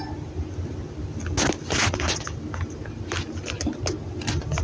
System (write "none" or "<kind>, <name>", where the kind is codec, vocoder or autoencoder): none